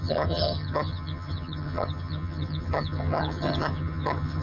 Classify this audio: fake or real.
fake